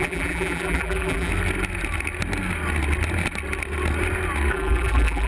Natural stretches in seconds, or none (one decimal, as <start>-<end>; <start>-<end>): 1.3-4.5